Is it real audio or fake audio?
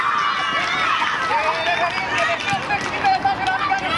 real